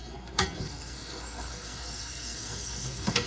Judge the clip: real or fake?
fake